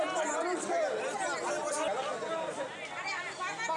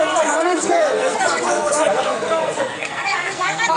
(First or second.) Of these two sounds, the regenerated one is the second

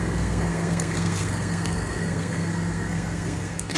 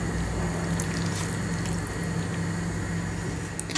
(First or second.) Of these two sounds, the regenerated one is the first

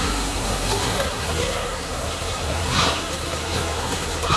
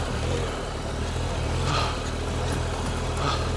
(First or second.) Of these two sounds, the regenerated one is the first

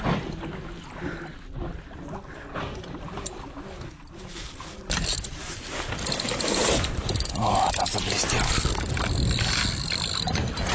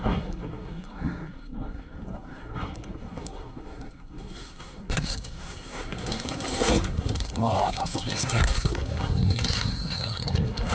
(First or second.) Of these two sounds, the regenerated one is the second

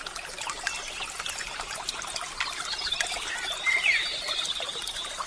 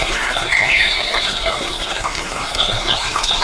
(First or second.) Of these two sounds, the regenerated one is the second